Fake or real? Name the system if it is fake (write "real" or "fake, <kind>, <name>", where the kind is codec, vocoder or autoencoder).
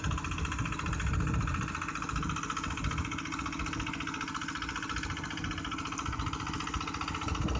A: real